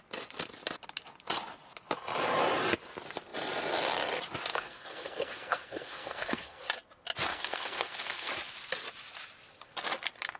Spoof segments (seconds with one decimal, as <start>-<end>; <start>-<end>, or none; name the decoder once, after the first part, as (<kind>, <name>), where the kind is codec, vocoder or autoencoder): 4.5-6.6 (codec, SNAC); 7.3-8.3